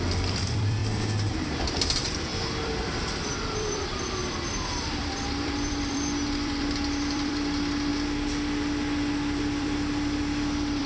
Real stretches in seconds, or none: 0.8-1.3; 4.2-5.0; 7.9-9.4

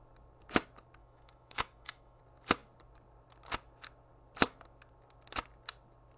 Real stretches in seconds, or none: 0.0-1.0; 2.2-6.2

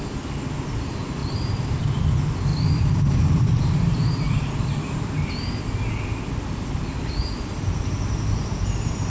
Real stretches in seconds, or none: 0.0-1.2; 1.8-2.5; 5.5-9.1

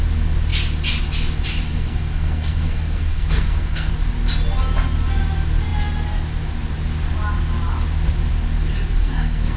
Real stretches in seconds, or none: 0.0-1.7; 3.9-9.0

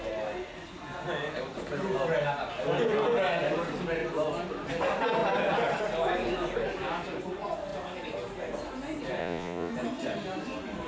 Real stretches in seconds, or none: 0.0-9.2; 9.7-10.9

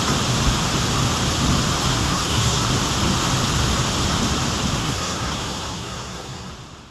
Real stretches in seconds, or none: 0.0-1.9; 2.7-4.8; 6.5-6.9